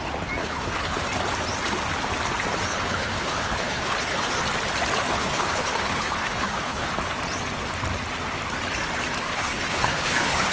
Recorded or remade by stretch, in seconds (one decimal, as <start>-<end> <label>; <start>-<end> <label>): 0.0-0.4 recorded; 0.4-1.0 remade; 1.0-2.7 recorded; 2.7-4.4 remade; 4.4-5.1 recorded; 5.1-6.9 remade; 6.9-9.3 recorded; 9.3-10.5 remade